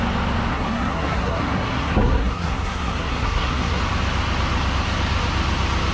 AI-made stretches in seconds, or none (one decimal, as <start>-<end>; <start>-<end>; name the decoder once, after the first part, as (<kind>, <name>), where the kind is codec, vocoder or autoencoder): 0.5-3.8 (codec, SNAC)